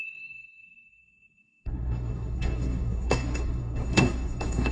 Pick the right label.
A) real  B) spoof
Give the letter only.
B